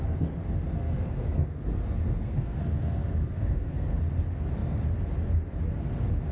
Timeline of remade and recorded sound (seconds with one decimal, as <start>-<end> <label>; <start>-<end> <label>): 0.0-0.8 recorded; 0.8-4.0 remade; 4.0-6.3 recorded